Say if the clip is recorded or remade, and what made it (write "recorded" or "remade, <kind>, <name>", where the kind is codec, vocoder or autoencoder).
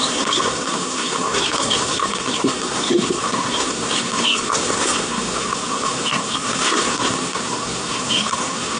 remade, codec, SNAC